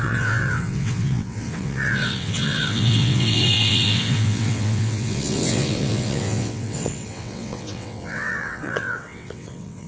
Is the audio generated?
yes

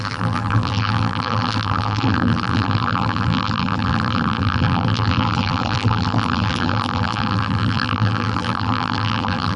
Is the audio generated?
yes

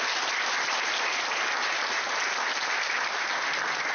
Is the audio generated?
no